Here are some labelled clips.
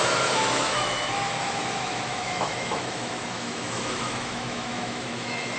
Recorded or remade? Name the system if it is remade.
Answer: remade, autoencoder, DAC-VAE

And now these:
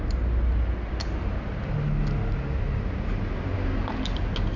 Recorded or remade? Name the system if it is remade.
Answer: recorded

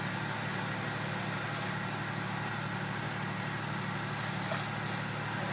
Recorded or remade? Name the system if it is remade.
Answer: recorded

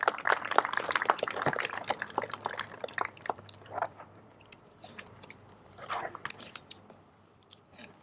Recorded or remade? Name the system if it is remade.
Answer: remade, vocoder, BigVGAN v2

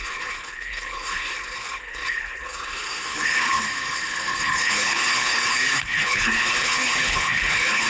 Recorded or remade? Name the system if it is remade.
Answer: remade, codec, HILCodec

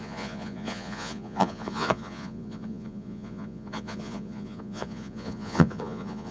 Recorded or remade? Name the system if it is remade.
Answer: remade, vocoder, Vocos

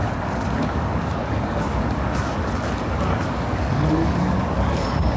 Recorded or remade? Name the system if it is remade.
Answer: remade, codec, DAC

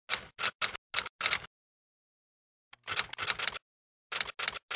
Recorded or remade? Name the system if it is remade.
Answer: recorded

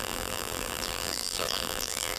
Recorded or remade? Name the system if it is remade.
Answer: remade, vocoder, BigVGAN v2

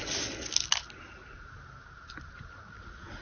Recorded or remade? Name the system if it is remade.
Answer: recorded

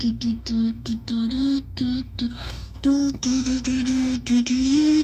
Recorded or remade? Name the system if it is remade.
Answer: remade, codec, DAC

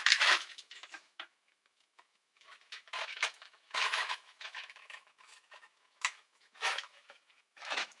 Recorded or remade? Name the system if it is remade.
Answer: remade, autoencoder, DAC-VAE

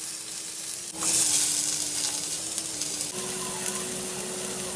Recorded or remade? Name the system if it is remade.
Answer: recorded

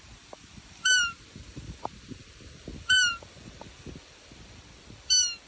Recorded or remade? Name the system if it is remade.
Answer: remade, vocoder, BigVGAN v2